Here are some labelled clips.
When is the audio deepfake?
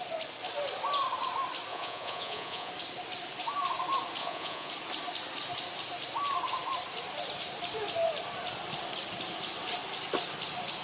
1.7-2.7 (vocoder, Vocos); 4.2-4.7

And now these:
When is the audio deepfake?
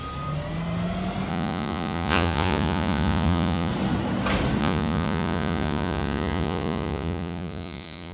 1.3-3.7 (vocoder, Vocos); 4.6-8.1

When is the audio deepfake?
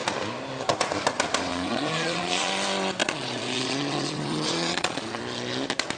1.5-2.5 (vocoder, Vocos); 3.0-5.2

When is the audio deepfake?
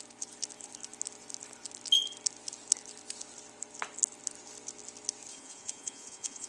5.3-6.5 (vocoder, Vocos)